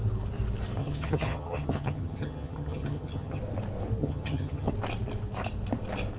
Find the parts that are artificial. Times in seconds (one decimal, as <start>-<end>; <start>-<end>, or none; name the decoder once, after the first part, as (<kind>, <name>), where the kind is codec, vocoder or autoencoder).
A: 0.8-3.4 (vocoder, HiFi-GAN); 4.0-4.7

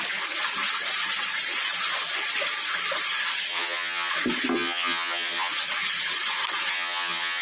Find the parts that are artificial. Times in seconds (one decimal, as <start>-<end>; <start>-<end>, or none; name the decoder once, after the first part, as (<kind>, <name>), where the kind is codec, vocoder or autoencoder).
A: 3.5-4.1 (vocoder, HiFi-GAN); 4.5-5.5; 6.7-7.4